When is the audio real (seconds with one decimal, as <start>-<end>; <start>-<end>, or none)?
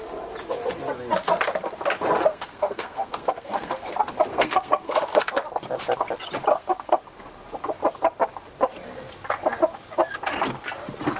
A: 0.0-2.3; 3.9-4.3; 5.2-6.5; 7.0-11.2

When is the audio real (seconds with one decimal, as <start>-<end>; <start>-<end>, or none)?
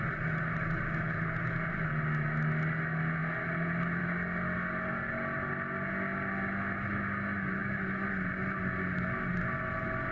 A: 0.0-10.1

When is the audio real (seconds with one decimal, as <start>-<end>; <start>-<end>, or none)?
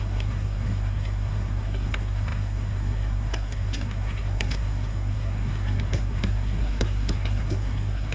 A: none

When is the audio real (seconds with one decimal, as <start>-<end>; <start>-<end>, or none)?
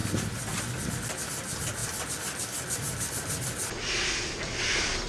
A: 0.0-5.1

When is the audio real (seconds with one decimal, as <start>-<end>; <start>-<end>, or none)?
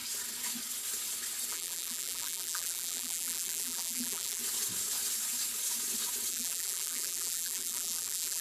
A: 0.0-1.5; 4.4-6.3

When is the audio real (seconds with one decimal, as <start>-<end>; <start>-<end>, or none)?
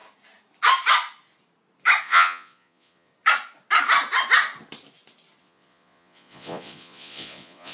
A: 0.0-2.0; 3.1-5.4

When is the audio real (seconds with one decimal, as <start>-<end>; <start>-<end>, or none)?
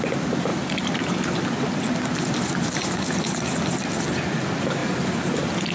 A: 0.0-0.5; 1.4-5.7